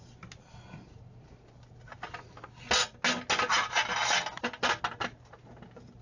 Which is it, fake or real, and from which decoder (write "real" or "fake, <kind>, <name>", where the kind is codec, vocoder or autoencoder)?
real